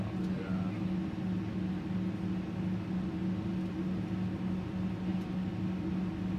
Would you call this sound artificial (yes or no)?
no